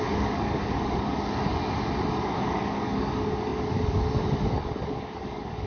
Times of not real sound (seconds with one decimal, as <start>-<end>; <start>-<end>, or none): 0.0-1.5; 2.1-5.7